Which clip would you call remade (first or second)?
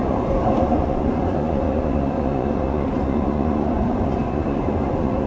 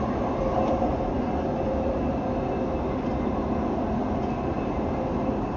first